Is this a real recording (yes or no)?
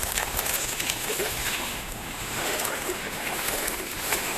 no